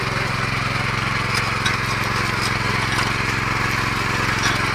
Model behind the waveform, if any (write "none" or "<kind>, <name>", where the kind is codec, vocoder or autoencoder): none